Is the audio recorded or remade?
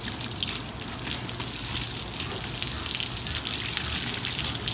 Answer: recorded